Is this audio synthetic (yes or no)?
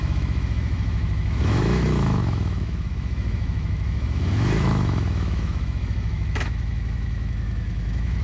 yes